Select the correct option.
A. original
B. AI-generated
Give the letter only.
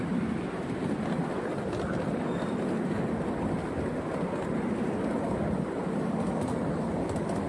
A